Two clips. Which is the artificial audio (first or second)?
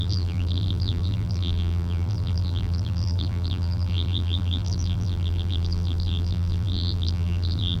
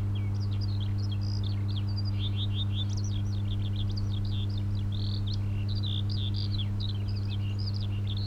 first